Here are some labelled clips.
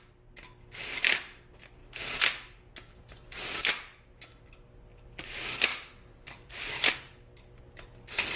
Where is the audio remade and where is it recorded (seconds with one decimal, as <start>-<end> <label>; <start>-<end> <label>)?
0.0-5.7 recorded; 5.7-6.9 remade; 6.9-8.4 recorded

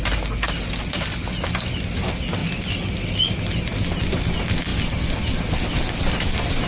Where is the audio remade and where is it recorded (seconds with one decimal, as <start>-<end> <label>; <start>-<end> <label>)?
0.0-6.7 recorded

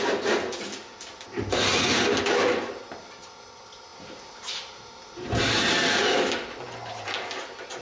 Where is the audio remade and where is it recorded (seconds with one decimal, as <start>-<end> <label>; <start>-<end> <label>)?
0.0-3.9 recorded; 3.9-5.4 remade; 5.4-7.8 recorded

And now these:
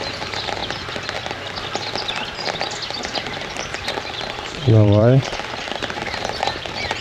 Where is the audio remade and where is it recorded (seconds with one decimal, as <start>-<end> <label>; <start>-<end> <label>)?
0.0-0.6 remade; 0.6-4.1 recorded; 4.1-7.0 remade

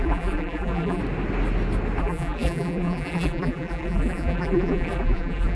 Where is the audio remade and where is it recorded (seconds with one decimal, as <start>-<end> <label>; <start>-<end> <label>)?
0.0-1.0 remade; 1.0-2.0 recorded; 2.0-5.5 remade

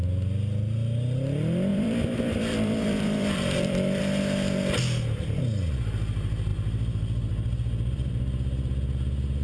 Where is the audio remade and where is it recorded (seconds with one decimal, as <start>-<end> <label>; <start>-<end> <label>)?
0.0-1.7 recorded; 1.7-4.0 remade; 4.0-6.5 recorded; 6.5-8.1 remade; 8.1-9.4 recorded